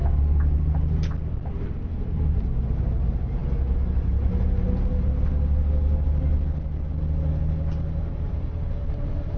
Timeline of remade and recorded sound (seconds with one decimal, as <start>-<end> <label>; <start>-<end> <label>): 0.0-9.4 recorded